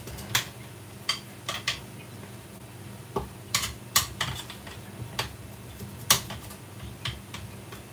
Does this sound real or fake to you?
real